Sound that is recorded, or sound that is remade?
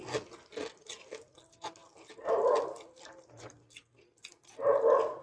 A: recorded